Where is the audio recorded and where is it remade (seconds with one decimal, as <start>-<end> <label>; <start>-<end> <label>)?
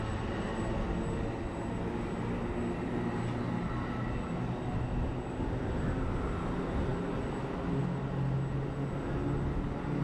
0.0-10.0 recorded